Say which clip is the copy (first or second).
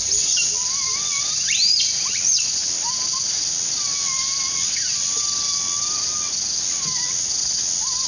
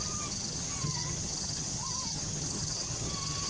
second